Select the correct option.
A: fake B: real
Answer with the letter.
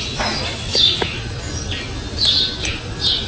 B